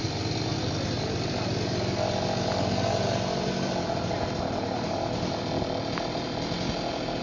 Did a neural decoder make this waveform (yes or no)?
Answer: no